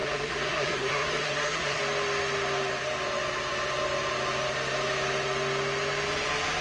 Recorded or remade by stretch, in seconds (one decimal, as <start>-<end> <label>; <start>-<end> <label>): 0.0-1.8 remade; 1.8-6.6 recorded